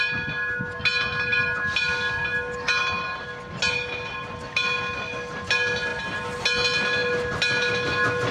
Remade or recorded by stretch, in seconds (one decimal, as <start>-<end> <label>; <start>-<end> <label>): 0.0-8.3 recorded